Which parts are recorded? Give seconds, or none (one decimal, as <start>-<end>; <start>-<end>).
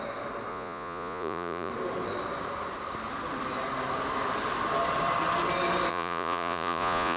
0.0-0.5; 1.7-5.9